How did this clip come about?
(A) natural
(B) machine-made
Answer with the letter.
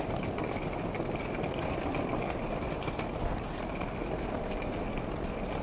A